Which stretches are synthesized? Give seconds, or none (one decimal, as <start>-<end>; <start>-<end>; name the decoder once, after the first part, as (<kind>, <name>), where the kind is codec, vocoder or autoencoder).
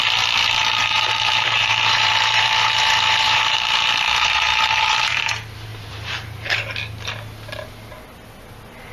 0.8-5.2 (vocoder, BigVGAN v2); 5.7-6.6